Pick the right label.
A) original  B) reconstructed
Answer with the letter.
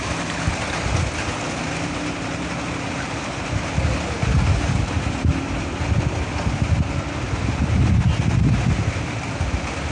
A